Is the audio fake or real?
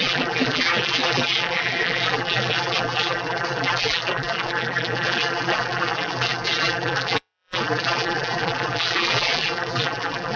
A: fake